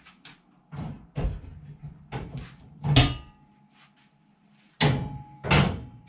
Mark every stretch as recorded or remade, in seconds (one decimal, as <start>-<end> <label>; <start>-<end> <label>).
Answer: 0.0-6.1 recorded